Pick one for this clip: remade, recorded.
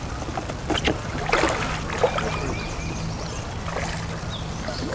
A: recorded